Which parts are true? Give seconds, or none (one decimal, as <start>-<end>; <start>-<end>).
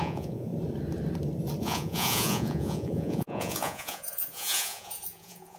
0.5-1.6